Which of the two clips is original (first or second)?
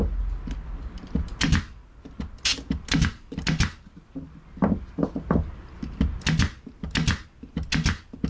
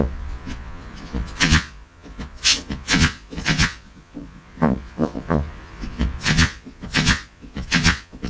first